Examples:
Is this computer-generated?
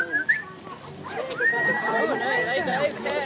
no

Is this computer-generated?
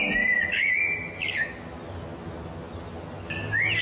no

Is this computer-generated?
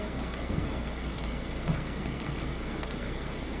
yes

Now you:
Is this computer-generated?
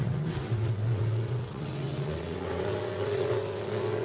yes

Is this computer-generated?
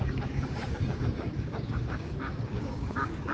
yes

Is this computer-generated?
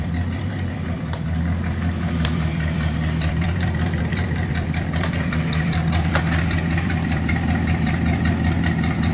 yes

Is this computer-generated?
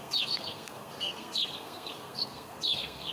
yes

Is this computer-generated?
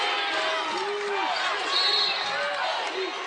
no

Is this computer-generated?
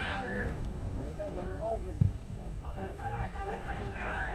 yes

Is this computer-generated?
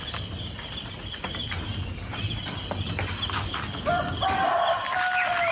no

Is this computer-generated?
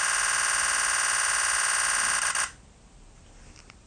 no